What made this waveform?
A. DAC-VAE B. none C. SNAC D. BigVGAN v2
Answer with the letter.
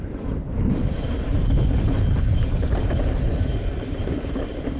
D